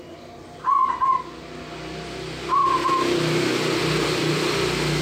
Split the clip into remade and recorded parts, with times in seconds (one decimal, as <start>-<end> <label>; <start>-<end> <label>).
0.0-5.0 recorded